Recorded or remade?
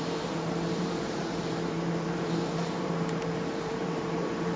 remade